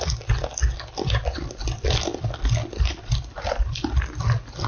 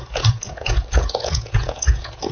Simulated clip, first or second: second